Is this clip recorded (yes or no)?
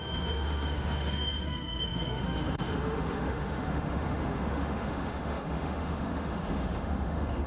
no